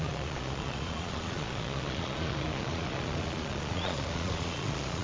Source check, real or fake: fake